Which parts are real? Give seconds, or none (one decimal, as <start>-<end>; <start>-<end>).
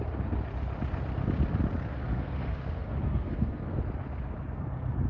0.0-1.9; 3.8-5.1